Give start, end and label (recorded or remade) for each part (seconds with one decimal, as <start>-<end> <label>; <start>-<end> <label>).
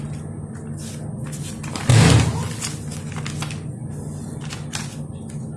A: 0.0-5.6 recorded